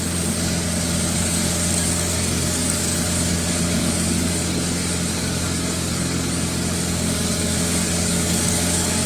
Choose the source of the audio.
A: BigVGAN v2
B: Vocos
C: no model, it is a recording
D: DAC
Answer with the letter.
D